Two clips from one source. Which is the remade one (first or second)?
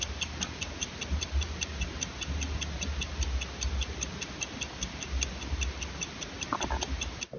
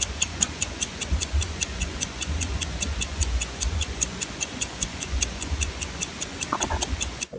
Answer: second